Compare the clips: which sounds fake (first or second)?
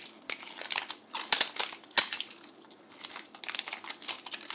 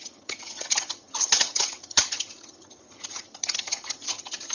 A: second